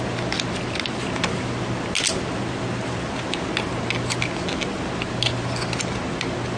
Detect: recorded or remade recorded